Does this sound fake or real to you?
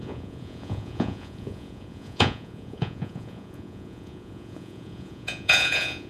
fake